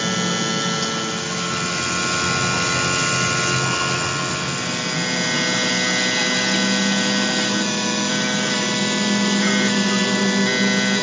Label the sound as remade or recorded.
recorded